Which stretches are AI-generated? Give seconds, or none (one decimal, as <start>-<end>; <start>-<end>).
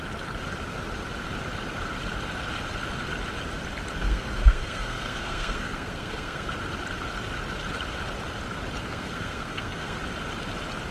4.0-6.5; 8.8-10.0